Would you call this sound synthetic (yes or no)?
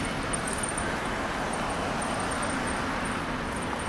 no